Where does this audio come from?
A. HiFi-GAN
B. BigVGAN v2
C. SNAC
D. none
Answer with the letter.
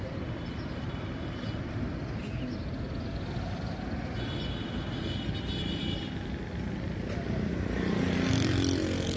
D